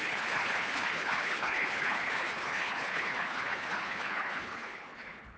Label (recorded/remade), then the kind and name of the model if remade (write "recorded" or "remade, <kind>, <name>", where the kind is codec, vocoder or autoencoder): remade, codec, HILCodec